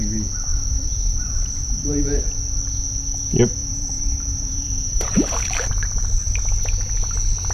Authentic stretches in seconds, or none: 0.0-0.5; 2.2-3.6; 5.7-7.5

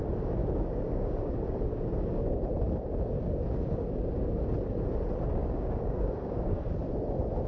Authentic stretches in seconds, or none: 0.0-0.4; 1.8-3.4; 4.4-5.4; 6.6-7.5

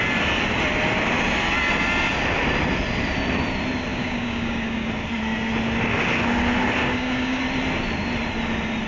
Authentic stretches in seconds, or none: 0.0-3.9; 4.9-6.8; 7.4-8.9

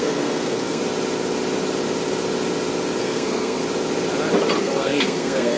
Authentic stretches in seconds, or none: 0.8-3.0; 3.6-4.6

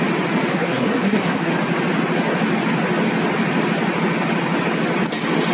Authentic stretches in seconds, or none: 0.0-0.5; 1.5-5.5

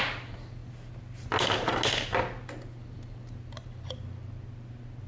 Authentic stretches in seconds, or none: 0.0-5.1